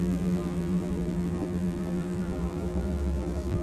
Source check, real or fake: fake